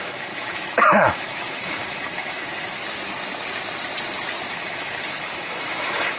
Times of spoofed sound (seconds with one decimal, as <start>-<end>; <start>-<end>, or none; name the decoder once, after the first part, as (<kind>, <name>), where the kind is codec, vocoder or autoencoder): 0.0-2.8 (autoencoder, DAC-VAE); 4.5-6.2